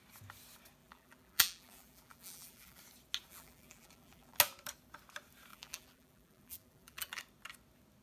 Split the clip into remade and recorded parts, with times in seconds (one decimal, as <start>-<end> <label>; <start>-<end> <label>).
0.0-0.8 recorded; 0.8-2.8 remade; 2.8-3.3 recorded; 3.3-4.4 remade; 4.4-5.5 recorded; 5.5-7.2 remade; 7.2-8.0 recorded